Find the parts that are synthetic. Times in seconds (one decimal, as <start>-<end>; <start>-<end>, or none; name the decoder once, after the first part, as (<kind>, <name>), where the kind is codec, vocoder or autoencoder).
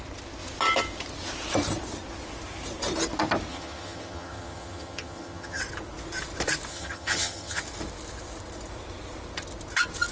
3.5-5.6 (vocoder, HiFi-GAN); 6.7-7.6